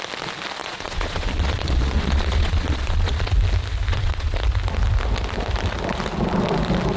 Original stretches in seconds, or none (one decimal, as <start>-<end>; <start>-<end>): 0.0-0.6; 3.3-3.9; 4.4-7.0